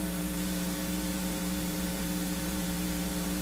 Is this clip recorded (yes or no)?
no